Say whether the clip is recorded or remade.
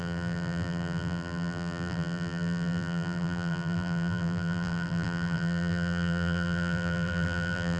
remade